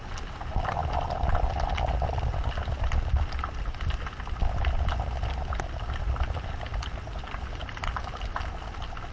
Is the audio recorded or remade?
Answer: recorded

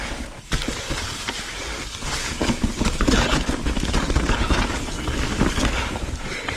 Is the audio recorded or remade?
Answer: remade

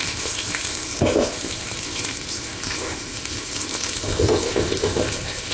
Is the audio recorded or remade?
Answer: remade